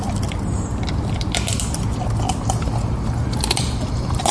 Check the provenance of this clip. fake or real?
real